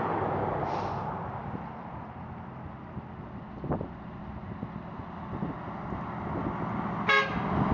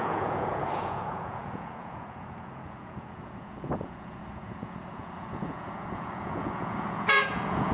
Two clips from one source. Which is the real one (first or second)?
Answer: first